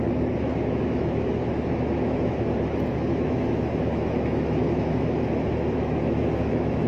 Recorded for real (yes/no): no